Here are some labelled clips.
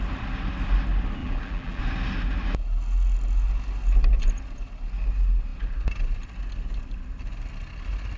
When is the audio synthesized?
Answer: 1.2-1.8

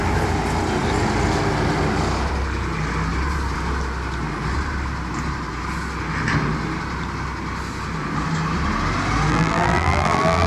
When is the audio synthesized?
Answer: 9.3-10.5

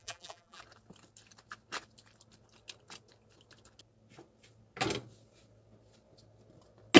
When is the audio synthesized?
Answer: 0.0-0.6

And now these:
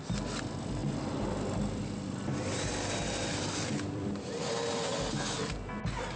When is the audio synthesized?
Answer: 0.8-4.4

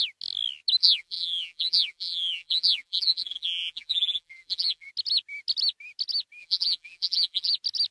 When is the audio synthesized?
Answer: 0.8-4.9; 6.4-7.5